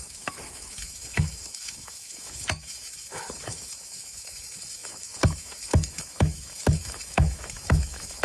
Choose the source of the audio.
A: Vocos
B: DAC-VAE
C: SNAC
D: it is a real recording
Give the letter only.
B